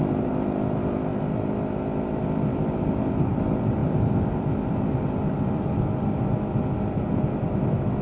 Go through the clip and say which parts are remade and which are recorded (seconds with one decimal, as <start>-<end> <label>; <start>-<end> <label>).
0.0-1.1 remade; 1.1-2.0 recorded; 2.0-8.0 remade